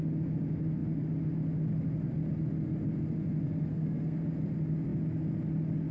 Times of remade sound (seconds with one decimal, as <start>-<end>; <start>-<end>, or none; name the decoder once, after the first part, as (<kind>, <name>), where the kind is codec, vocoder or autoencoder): 3.7-4.2 (codec, SNAC)